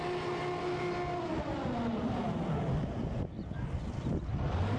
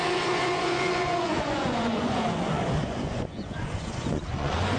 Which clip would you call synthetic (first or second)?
second